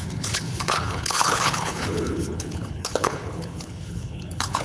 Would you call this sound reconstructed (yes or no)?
yes